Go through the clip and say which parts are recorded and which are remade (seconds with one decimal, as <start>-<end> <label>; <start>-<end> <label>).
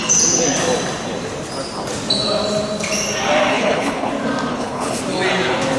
0.0-3.5 recorded; 3.5-4.1 remade; 4.1-4.5 recorded; 4.5-5.0 remade; 5.0-5.8 recorded